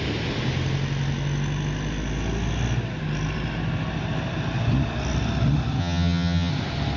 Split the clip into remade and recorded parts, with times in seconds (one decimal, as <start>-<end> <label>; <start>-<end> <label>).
0.0-5.8 recorded; 5.8-6.5 remade; 6.5-7.0 recorded